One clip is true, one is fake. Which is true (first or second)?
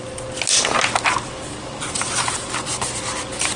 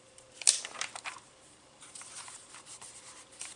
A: first